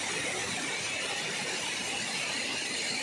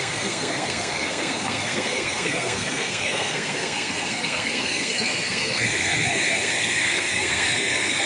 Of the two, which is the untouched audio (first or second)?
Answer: first